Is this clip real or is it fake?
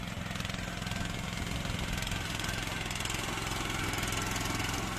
real